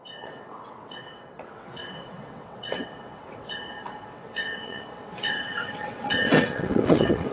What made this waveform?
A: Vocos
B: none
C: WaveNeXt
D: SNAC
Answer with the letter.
C